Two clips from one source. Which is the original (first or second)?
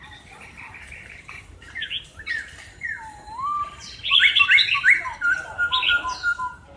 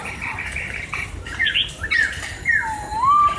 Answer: second